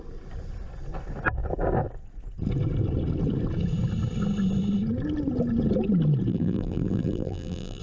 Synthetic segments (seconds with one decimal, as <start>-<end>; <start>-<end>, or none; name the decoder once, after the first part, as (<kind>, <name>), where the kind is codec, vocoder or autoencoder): 6.3-7.8 (vocoder, BigVGAN v2)